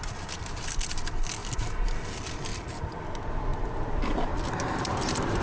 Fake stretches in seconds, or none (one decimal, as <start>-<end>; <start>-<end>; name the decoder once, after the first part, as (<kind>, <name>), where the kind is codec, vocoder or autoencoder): 1.4-2.1 (vocoder, BigVGAN v2); 2.5-3.0; 3.5-5.4